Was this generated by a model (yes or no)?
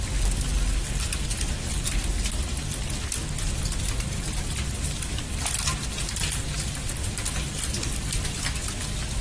no